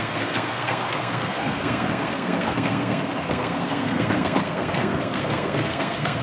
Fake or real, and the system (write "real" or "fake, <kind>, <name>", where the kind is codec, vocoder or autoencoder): fake, codec, SNAC